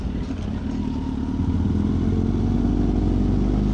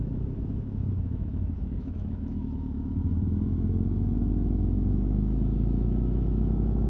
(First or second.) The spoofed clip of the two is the second